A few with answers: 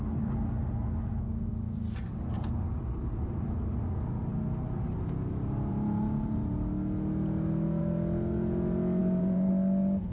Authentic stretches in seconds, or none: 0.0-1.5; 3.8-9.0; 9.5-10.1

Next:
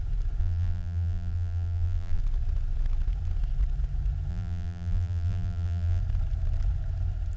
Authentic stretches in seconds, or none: 0.0-0.4; 2.2-4.3; 6.0-7.4

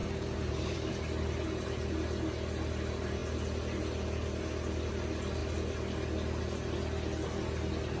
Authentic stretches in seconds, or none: 0.9-8.0

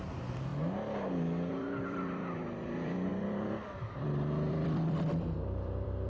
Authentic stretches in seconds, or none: 0.5-1.5

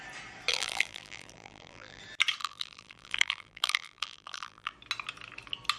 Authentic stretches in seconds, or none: 0.0-0.5; 2.0-2.4; 4.7-5.8

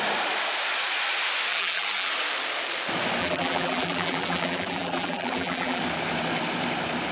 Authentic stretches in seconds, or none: 0.0-1.5; 2.1-3.2; 5.8-7.1